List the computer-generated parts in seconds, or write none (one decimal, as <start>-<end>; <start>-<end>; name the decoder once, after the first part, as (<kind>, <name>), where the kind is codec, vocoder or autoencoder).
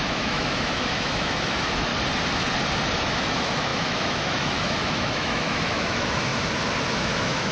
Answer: 0.0-1.9 (autoencoder, DAC-VAE); 3.0-6.3; 6.9-7.5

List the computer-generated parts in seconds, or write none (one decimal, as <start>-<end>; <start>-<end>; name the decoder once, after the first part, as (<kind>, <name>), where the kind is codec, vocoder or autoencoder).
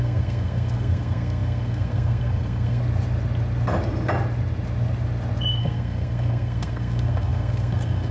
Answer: 0.0-2.8 (codec, SNAC); 5.6-8.1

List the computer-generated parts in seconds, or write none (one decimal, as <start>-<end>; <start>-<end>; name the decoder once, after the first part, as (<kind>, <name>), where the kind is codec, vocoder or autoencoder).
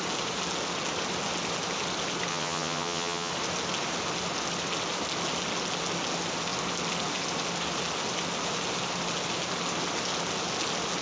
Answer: 2.3-3.3 (vocoder, HiFi-GAN)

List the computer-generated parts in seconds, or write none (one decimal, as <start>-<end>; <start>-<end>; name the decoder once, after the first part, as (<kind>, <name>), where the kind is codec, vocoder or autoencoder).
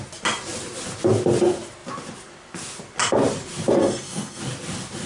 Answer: 3.8-4.4 (codec, SNAC)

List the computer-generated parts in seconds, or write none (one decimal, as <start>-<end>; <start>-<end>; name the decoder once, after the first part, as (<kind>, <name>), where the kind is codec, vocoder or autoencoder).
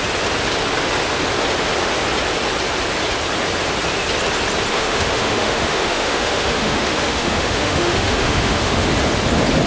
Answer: 4.7-8.9 (autoencoder, DAC-VAE)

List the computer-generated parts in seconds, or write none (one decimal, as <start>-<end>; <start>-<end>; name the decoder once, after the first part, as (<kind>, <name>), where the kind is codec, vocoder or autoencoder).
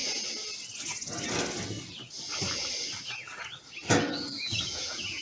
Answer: 3.1-3.5 (vocoder, Vocos); 4.0-5.2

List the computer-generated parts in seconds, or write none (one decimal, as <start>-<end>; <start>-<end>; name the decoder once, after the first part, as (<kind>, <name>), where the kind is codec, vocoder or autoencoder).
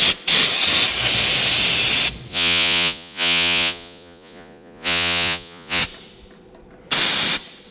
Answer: 2.3-5.8 (vocoder, Vocos)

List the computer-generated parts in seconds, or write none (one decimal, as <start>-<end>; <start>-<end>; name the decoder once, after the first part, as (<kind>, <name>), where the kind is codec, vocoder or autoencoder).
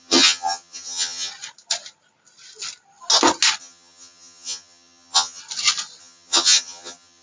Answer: 0.0-1.3 (vocoder, HiFi-GAN); 3.6-5.4; 6.0-7.2